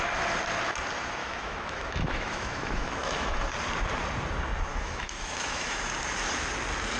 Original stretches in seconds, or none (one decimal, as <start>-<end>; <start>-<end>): 0.0-1.2; 3.4-4.7; 5.8-7.0